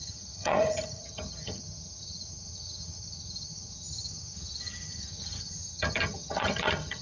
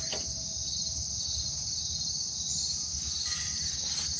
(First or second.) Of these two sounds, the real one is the second